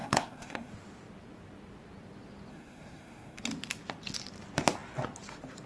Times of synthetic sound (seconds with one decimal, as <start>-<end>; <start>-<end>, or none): 0.0-0.7; 2.5-3.4